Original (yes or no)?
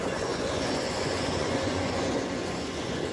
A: no